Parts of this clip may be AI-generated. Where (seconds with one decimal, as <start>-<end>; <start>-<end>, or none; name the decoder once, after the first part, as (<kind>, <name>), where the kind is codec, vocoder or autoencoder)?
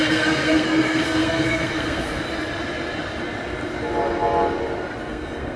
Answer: 0.0-2.2 (codec, SNAC); 5.1-5.6